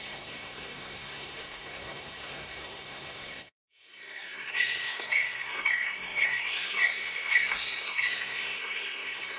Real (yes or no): no